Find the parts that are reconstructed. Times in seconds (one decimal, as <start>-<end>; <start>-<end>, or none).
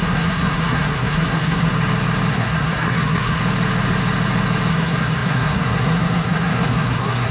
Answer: 0.0-1.7; 2.3-3.4; 4.7-7.3